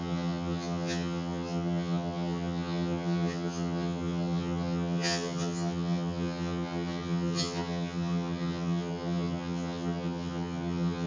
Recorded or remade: remade